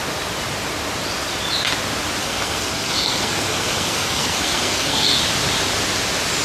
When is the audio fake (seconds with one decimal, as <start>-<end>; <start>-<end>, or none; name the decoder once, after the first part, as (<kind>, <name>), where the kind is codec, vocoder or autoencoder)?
2.2-5.2 (codec, SNAC)